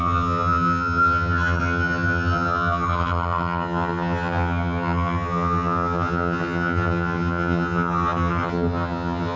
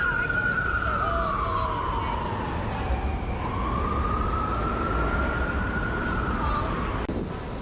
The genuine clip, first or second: second